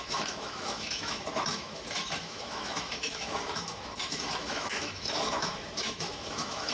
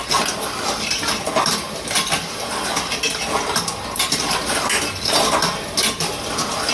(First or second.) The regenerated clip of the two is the first